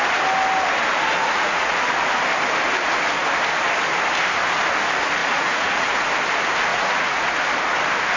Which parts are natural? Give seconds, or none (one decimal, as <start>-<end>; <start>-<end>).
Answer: 0.0-1.2; 1.8-5.2; 6.1-6.7; 7.3-8.2